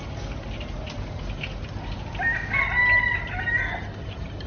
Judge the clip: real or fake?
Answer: real